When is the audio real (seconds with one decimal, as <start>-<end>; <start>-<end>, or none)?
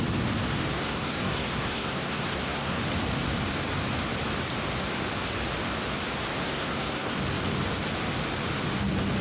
0.0-0.7; 2.8-6.3; 7.2-9.2